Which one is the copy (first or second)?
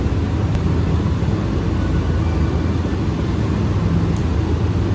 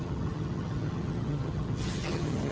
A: second